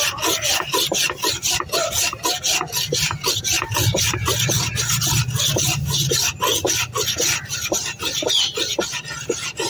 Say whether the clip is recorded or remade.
recorded